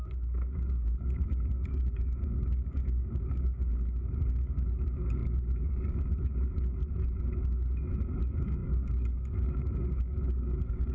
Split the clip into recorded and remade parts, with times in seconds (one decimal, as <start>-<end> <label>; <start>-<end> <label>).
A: 0.0-6.8 remade; 6.8-8.2 recorded; 8.2-10.9 remade